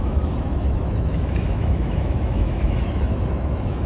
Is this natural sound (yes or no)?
no